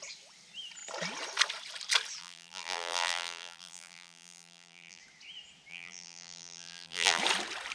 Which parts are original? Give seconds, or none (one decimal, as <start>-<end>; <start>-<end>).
0.0-2.2; 5.0-5.7; 7.2-7.7